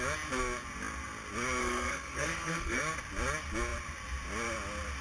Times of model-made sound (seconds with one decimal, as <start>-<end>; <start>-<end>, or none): 1.6-2.8